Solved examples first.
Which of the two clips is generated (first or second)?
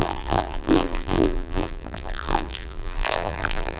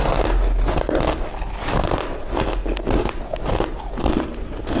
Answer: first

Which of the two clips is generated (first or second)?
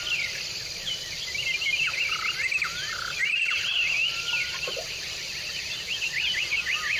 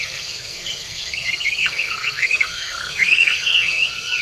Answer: second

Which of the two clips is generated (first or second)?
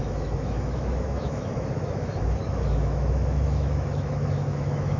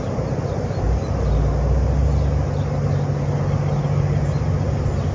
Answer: first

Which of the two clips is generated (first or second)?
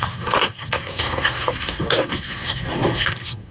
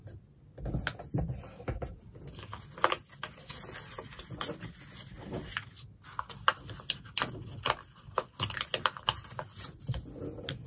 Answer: first